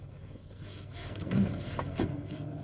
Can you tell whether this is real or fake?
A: fake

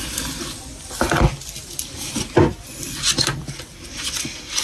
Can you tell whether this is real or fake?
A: real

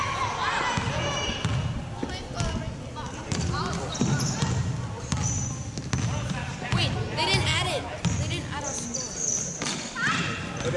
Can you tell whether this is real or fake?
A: real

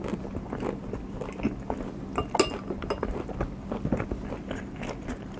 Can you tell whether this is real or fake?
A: real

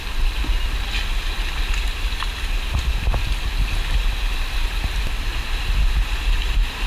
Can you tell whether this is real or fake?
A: real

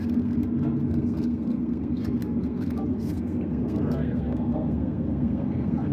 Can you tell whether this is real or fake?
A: fake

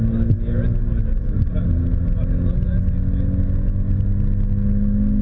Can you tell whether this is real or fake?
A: real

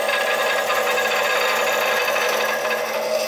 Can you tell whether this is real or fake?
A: real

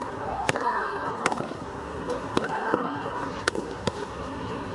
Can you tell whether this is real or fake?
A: fake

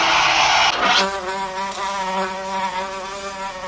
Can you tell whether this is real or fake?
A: real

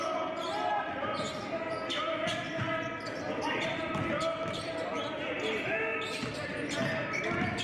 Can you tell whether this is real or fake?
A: real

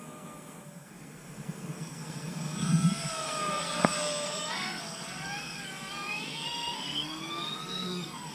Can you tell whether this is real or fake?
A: fake